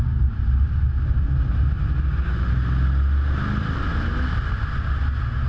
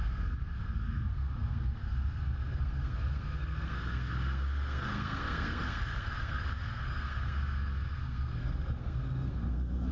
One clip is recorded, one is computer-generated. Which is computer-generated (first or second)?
second